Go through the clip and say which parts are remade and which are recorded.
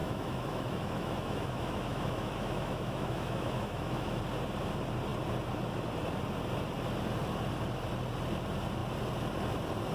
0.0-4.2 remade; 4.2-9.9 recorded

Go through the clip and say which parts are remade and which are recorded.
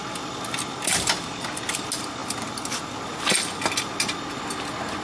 0.0-5.0 recorded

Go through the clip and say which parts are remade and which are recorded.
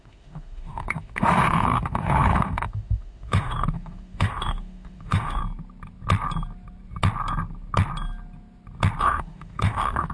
0.0-5.4 remade; 5.4-9.0 recorded; 9.0-10.1 remade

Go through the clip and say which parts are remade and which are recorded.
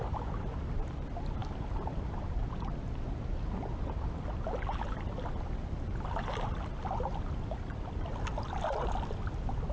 0.0-9.7 recorded